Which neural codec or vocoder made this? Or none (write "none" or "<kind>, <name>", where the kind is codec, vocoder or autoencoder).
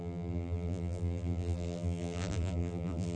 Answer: vocoder, BigVGAN v2